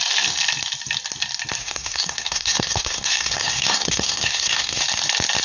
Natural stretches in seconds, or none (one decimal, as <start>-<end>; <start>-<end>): 0.0-1.6; 4.8-5.4